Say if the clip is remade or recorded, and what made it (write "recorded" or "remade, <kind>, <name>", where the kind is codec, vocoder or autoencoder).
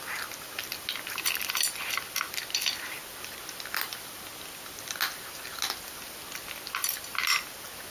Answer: recorded